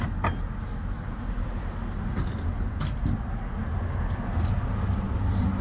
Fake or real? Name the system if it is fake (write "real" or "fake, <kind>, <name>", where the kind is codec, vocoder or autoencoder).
real